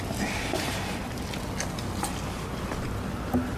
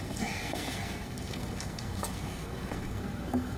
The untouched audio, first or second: first